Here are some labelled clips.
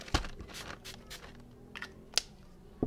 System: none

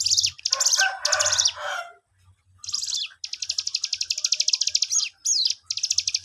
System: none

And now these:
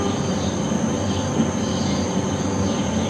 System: none